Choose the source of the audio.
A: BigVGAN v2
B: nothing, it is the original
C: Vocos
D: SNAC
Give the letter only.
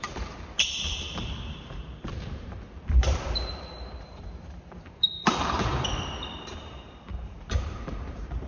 A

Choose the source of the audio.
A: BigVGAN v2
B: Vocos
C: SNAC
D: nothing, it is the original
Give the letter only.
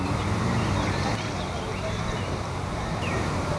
A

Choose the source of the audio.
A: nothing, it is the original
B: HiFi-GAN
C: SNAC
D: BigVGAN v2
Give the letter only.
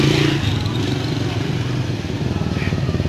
A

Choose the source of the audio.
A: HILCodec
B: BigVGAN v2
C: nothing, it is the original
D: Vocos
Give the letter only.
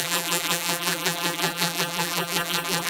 B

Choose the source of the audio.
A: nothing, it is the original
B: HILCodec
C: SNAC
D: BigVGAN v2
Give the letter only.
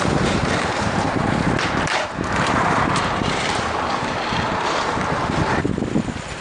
D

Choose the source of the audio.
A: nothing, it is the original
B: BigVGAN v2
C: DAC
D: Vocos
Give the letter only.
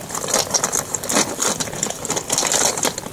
B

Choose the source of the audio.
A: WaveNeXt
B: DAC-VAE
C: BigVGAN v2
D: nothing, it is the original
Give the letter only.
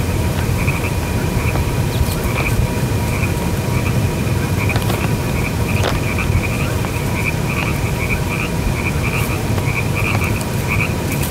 C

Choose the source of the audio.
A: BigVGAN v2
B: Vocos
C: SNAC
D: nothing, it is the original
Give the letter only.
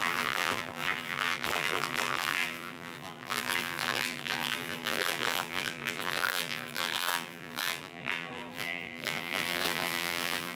A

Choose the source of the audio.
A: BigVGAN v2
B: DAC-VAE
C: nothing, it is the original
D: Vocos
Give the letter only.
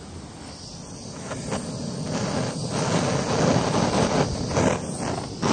C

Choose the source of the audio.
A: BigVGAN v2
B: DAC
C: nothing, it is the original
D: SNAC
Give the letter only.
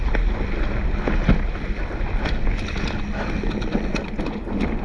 C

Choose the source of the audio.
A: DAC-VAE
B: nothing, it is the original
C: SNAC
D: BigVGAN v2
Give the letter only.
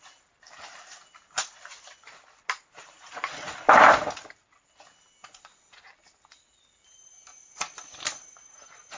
B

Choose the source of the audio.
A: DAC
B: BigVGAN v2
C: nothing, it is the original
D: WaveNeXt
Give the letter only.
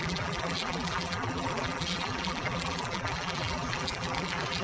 B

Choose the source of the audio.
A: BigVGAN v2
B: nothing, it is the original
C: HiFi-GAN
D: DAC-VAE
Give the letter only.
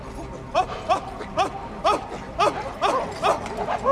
B